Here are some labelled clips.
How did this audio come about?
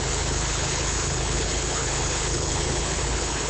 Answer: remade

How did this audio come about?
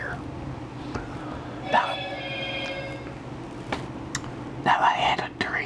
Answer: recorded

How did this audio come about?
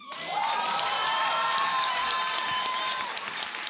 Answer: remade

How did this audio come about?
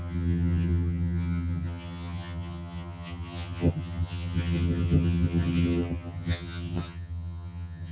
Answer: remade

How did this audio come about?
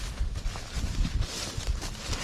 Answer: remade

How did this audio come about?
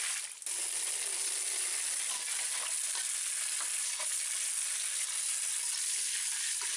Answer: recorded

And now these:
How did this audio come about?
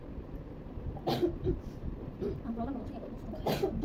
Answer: remade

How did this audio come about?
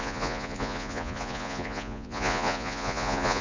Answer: remade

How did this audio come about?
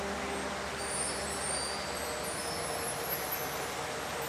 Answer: recorded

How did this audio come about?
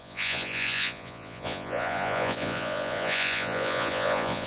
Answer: remade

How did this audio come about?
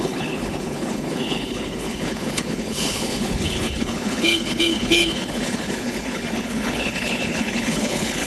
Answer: remade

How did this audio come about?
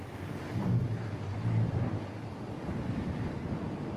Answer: remade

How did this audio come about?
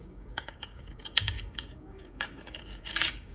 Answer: remade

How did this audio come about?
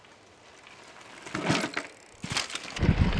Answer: recorded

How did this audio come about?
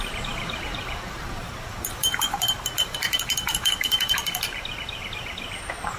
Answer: remade